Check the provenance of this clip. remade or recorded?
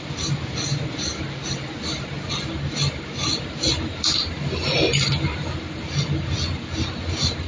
recorded